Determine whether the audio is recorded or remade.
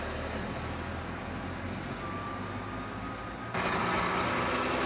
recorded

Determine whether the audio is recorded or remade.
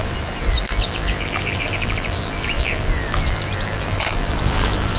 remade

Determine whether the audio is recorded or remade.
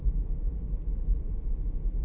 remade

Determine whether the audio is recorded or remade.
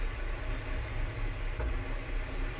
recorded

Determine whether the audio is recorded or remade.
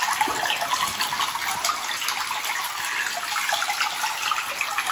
recorded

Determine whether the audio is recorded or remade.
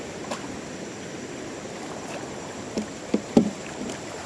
remade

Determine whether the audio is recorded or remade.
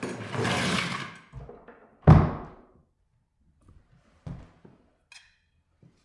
recorded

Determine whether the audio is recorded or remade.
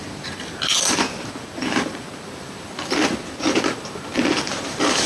remade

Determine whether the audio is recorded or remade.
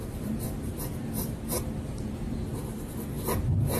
remade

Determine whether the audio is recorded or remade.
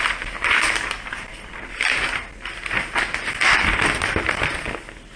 recorded